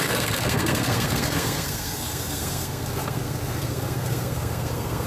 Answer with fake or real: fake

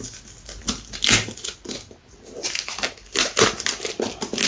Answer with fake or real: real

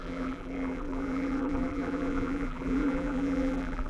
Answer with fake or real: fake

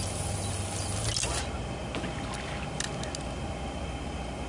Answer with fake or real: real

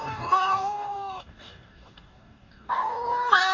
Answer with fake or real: fake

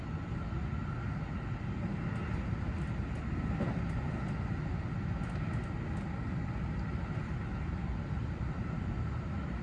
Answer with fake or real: real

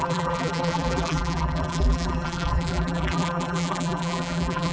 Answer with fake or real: fake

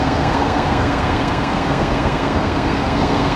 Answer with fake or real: fake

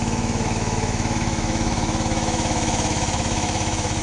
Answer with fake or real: fake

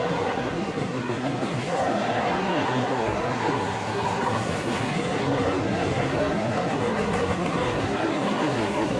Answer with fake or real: fake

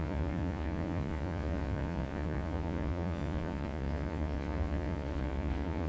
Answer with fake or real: fake